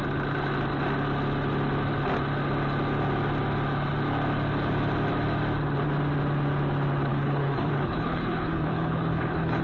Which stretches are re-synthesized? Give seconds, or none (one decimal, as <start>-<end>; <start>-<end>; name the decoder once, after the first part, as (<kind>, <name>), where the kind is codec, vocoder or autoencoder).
7.1-9.6 (codec, HILCodec)